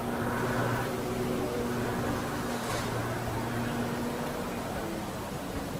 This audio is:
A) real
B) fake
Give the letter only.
A